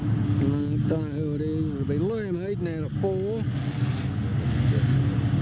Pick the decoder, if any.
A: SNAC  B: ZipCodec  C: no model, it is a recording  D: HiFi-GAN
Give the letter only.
C